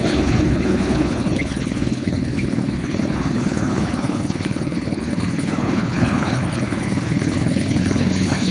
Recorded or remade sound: remade